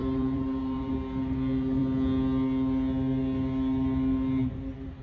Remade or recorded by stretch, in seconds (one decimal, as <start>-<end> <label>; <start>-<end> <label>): 0.0-0.9 remade; 0.9-5.0 recorded